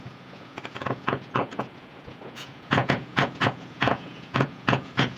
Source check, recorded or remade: remade